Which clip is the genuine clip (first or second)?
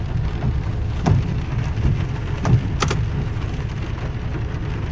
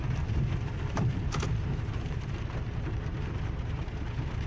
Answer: first